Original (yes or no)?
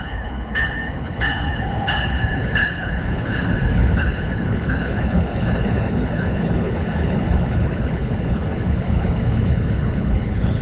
no